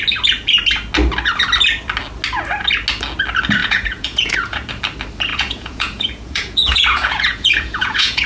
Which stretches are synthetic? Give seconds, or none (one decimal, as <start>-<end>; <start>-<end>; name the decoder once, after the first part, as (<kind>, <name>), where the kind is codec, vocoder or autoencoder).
3.6-4.7 (vocoder, Vocos); 5.3-8.3